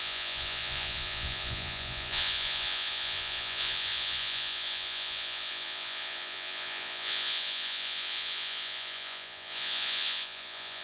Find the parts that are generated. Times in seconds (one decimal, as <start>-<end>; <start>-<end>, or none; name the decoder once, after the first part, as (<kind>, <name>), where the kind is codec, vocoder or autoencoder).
0.0-10.8 (vocoder, Vocos)

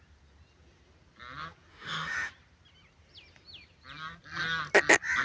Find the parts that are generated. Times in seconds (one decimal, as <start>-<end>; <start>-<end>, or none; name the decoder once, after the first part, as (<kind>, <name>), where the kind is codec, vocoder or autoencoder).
1.7-2.3 (autoencoder, DAC-VAE)